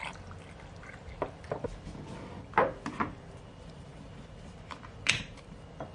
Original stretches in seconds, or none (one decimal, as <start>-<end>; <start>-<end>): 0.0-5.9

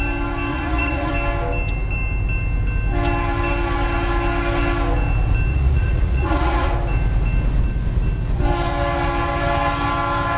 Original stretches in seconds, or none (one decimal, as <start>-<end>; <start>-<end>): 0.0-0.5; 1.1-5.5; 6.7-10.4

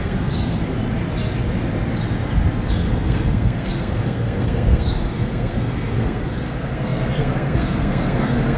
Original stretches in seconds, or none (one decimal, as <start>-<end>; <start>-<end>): 0.7-2.7

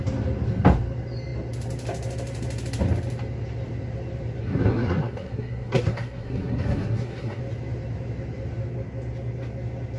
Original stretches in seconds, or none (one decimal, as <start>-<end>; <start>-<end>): 0.0-4.4; 7.4-10.0

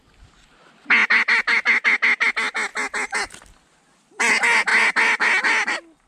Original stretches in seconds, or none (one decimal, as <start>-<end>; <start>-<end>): 0.0-1.0; 2.3-6.1

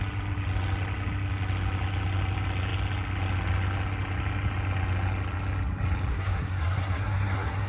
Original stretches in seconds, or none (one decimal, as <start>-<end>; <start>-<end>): 0.0-6.1